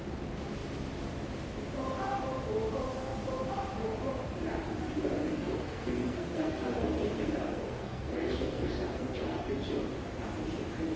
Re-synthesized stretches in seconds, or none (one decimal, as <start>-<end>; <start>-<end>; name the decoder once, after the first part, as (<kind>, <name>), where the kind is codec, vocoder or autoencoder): 5.2-9.7 (codec, SNAC)